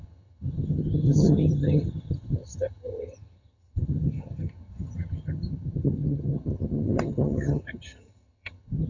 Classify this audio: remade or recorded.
remade